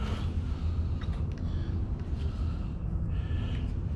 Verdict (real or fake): real